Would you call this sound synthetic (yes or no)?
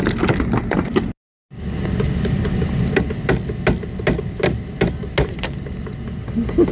no